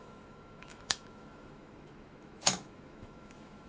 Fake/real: fake